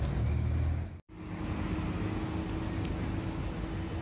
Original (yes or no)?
yes